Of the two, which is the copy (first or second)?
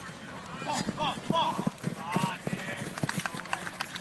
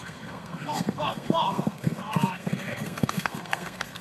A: second